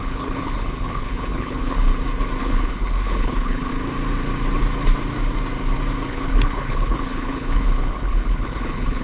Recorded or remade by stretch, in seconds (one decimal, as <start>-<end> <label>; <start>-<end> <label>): 0.0-1.9 remade; 1.9-2.4 recorded; 2.4-3.7 remade; 3.7-6.1 recorded; 6.1-9.0 remade